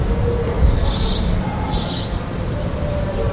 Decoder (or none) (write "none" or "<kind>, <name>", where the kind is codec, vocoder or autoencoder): none